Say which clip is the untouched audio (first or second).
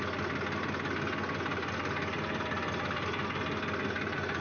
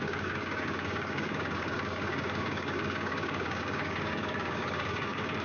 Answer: first